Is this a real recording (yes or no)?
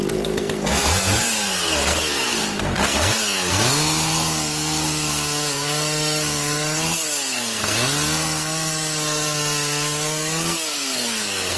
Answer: no